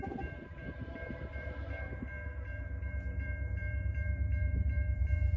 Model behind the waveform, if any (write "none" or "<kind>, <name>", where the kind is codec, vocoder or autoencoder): vocoder, BigVGAN v2